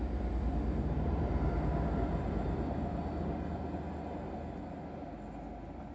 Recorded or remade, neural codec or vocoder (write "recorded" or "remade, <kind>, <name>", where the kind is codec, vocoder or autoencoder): recorded